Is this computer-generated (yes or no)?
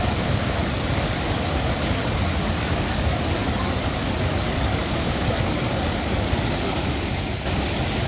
yes